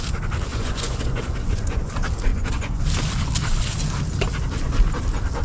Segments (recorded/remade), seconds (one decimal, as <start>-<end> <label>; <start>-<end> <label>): 0.0-0.5 recorded; 0.5-1.9 remade; 1.9-2.3 recorded; 2.3-2.8 remade; 2.8-5.4 recorded